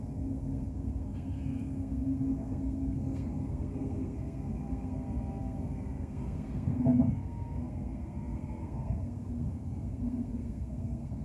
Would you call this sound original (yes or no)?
no